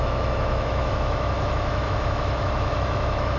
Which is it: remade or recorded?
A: remade